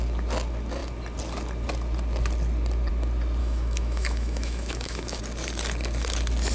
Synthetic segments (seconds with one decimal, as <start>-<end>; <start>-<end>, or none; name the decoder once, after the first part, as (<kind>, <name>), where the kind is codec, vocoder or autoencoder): 3.4-5.2 (autoencoder, DAC-VAE)